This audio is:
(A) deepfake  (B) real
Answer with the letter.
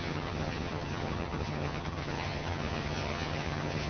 A